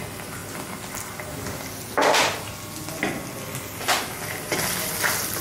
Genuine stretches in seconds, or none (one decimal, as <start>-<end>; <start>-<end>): 0.0-5.4